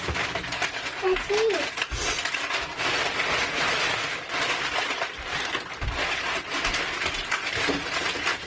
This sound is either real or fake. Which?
real